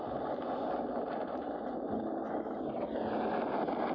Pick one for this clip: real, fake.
real